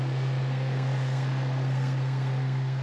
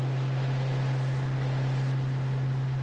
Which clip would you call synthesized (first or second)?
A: first